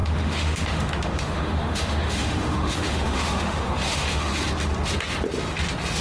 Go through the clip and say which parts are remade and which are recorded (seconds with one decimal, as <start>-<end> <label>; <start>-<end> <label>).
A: 0.0-4.3 remade; 4.3-6.0 recorded